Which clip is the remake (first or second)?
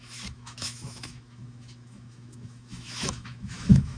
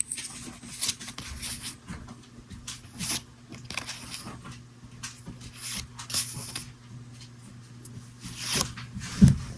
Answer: first